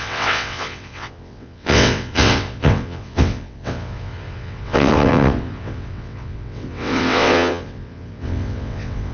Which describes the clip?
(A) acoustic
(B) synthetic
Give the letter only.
B